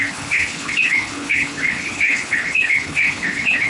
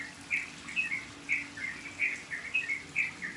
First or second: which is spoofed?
first